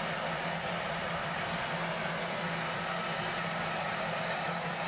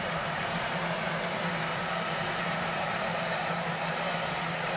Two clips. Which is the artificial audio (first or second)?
second